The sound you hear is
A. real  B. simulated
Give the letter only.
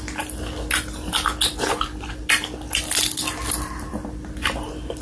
A